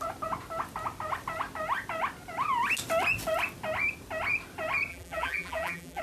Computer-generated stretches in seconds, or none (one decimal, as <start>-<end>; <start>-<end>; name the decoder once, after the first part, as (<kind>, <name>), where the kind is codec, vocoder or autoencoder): 4.9-6.0 (vocoder, BigVGAN v2)